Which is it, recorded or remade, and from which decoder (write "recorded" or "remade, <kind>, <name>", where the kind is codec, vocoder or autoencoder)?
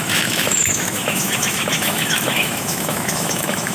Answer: remade, autoencoder, DAC-VAE